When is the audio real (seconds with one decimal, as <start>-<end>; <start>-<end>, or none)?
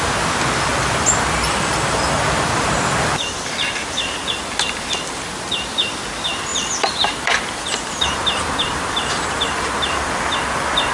0.0-0.7; 4.4-6.5